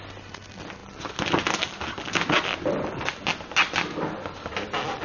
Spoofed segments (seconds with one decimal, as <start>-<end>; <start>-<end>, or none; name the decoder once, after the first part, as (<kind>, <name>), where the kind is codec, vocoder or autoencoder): none